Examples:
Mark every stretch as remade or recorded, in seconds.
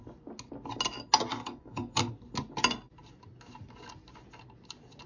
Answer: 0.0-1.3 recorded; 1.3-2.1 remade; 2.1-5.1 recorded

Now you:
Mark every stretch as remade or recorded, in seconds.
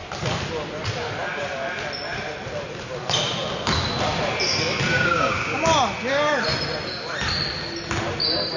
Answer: 0.0-4.9 recorded; 4.9-5.6 remade; 5.6-8.6 recorded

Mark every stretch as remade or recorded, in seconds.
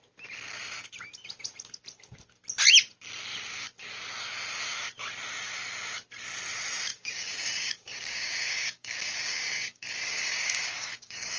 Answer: 0.0-6.9 recorded; 6.9-11.4 remade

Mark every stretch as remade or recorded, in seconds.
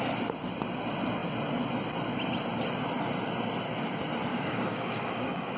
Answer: 0.0-4.3 recorded; 4.3-5.6 remade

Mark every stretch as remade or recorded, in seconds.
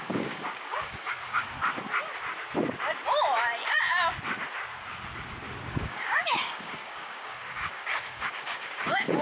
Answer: 0.0-1.5 remade; 1.5-5.7 recorded; 5.7-9.2 remade